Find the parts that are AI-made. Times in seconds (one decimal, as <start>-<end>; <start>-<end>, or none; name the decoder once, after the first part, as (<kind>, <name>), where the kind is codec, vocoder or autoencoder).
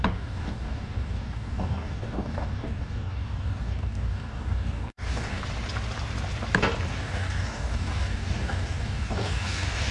0.0-5.4 (codec, DAC); 6.9-9.9